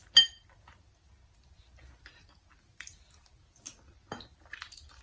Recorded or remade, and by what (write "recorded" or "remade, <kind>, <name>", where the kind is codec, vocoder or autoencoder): recorded